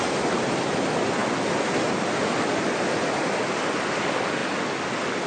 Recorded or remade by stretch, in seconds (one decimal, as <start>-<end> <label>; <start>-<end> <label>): 0.0-5.3 recorded

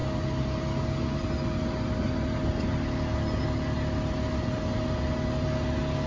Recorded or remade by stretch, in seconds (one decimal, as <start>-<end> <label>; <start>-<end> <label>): 0.0-6.1 recorded

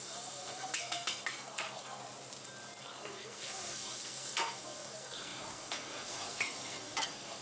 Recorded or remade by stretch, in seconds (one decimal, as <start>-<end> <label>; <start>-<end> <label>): 0.0-2.0 remade; 2.0-2.8 recorded; 2.8-7.4 remade

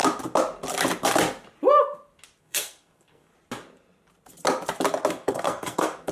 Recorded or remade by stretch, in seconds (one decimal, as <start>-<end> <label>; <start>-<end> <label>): 0.0-2.4 recorded; 2.4-3.3 remade; 3.3-5.1 recorded; 5.1-6.1 remade

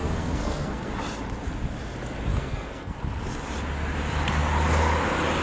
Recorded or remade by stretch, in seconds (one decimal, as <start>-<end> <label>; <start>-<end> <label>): 0.0-0.9 remade; 0.9-2.3 recorded; 2.3-3.0 remade; 3.0-5.4 recorded

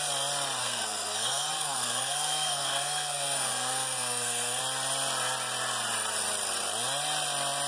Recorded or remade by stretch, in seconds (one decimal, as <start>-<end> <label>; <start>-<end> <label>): 0.0-0.6 recorded; 0.6-4.6 remade; 4.6-7.7 recorded

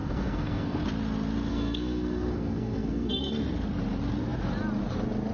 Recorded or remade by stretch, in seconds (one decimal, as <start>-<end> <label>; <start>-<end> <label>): 0.0-0.8 remade; 0.8-1.5 recorded; 1.5-3.3 remade; 3.3-5.3 recorded